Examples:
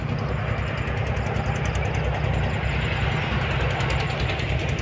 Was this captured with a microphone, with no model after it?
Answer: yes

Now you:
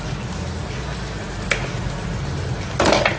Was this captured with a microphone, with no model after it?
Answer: yes